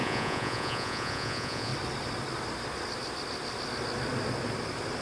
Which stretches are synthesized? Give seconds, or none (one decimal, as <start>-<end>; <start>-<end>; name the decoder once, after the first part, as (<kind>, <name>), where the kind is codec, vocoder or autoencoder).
0.0-1.7 (vocoder, Vocos)

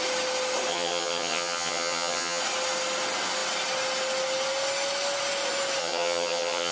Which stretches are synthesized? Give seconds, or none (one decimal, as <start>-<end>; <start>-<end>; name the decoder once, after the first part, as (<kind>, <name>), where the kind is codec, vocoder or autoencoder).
0.7-2.4 (vocoder, HiFi-GAN); 5.8-6.7